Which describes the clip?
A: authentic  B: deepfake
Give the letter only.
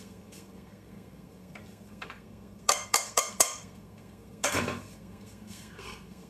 B